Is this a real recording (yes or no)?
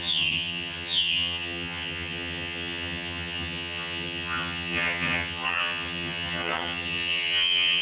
no